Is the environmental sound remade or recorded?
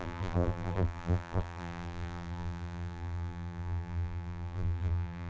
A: remade